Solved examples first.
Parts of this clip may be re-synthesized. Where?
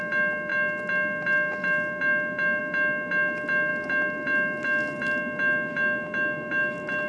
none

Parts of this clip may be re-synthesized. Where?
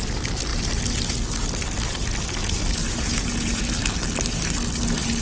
2.8-3.6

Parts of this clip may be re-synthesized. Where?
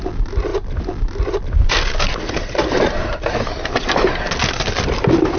none